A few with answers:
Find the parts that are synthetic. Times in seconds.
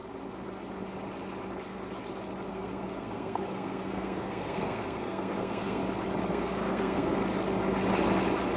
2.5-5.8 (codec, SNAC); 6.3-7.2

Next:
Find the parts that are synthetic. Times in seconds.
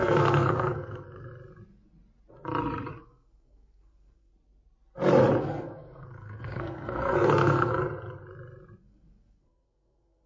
0.0-1.3 (codec, SNAC); 2.9-4.3; 5.4-7.7; 8.8-10.3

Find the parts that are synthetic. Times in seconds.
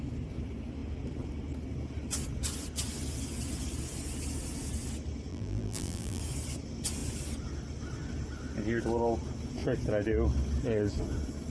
5.3-6.2 (vocoder, BigVGAN v2)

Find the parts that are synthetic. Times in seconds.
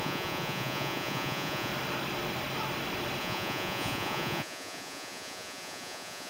0.0-1.7 (vocoder, Vocos); 3.2-6.3